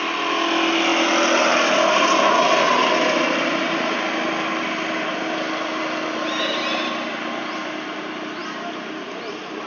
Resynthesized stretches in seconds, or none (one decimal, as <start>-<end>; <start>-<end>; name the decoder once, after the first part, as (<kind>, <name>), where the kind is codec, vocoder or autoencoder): none